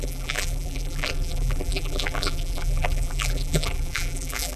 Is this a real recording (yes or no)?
no